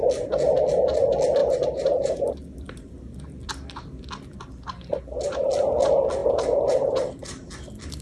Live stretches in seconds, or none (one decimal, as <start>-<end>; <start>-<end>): 0.0-1.4; 2.3-6.2; 7.5-8.0